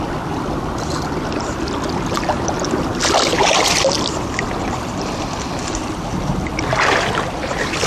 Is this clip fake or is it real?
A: real